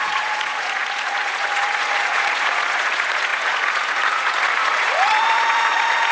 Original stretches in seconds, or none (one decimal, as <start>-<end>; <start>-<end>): none

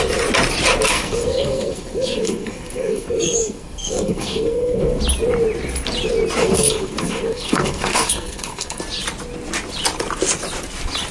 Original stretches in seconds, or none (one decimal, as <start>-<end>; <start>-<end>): 0.0-0.9; 5.0-6.4; 8.8-11.1

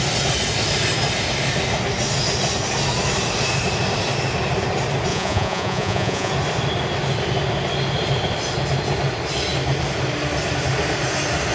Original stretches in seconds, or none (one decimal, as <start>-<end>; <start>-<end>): 0.0-5.1; 6.3-11.5

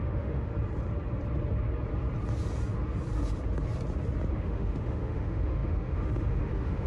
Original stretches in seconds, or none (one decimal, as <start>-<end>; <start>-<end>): 0.5-4.3

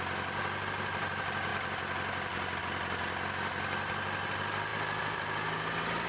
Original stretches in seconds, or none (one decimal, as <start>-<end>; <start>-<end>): 0.0-6.1